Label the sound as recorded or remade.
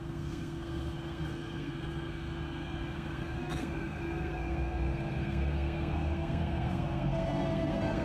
remade